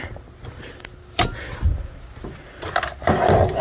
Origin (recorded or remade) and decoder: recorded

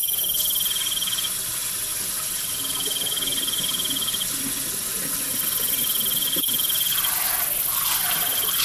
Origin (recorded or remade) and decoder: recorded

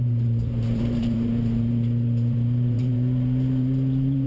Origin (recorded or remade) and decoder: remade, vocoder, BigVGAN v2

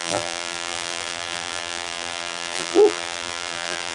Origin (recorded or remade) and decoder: remade, vocoder, BigVGAN v2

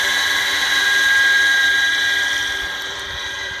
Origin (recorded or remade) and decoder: remade, vocoder, BigVGAN v2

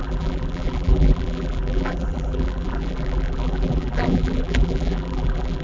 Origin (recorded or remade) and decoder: remade, vocoder, BigVGAN v2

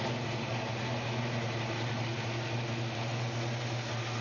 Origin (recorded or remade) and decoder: recorded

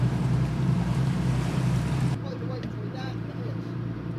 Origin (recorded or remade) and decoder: remade, vocoder, BigVGAN v2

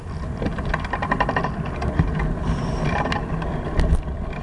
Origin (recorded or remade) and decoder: recorded